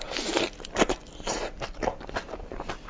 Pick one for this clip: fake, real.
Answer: real